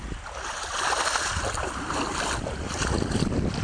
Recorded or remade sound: recorded